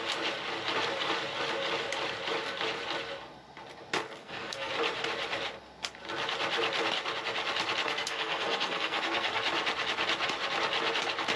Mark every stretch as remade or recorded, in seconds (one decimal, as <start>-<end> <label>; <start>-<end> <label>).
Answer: 0.0-4.2 recorded; 4.2-4.7 remade; 4.7-7.8 recorded; 7.8-9.4 remade; 9.4-11.4 recorded